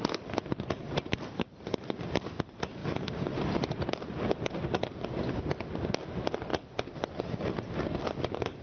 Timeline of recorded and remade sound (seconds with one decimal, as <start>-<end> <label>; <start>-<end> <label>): 0.0-2.8 recorded; 2.8-4.8 remade; 4.8-8.6 recorded

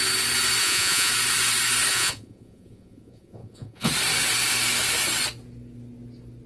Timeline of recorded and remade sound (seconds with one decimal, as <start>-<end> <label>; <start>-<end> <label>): 0.0-0.6 recorded; 0.6-1.1 remade; 1.1-1.9 recorded; 1.9-3.9 remade; 3.9-6.5 recorded

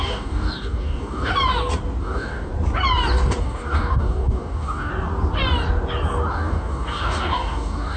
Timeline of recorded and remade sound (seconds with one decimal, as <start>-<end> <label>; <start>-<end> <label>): 0.0-1.3 remade; 1.3-2.0 recorded; 2.0-2.5 remade; 2.5-3.4 recorded; 3.4-4.9 remade; 4.9-6.3 recorded; 6.3-8.0 remade

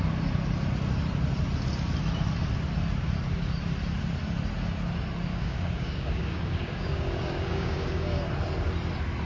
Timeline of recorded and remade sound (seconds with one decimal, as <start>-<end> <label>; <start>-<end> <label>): 0.0-5.3 recorded; 5.3-8.3 remade; 8.3-9.3 recorded